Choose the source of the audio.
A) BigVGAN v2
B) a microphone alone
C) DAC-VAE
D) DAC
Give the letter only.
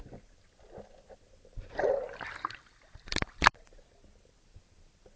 A